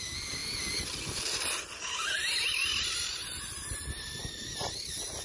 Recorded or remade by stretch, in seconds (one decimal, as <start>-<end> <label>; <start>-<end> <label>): 0.0-5.2 recorded